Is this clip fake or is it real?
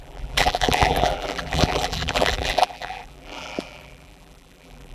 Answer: fake